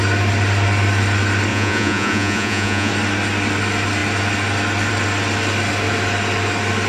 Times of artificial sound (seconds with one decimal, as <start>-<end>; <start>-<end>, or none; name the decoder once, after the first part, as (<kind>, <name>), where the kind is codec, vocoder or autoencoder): 1.5-2.9 (vocoder, Vocos)